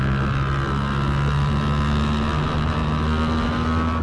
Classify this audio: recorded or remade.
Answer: recorded